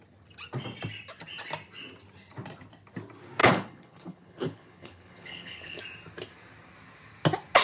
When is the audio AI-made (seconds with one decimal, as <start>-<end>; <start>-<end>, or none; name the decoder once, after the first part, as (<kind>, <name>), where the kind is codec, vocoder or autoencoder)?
3.4-5.8 (codec, HILCodec)